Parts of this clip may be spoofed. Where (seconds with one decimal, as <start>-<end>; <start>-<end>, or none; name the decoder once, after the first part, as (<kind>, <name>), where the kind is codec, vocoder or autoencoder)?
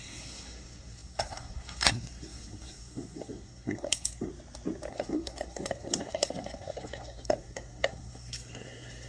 0.0-4.3 (codec, SNAC); 4.9-9.1